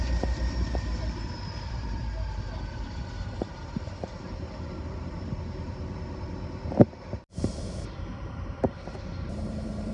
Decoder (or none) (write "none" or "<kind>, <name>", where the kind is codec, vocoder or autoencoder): vocoder, BigVGAN v2